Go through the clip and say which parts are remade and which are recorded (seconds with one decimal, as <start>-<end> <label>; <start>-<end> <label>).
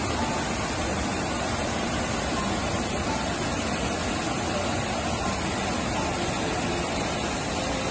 0.0-7.9 recorded